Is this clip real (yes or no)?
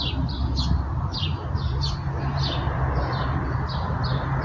yes